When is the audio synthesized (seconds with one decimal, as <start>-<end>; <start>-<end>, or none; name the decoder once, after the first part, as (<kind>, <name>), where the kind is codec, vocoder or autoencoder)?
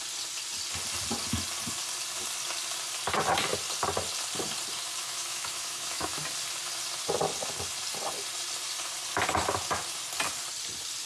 5.0-6.2 (autoencoder, DAC-VAE)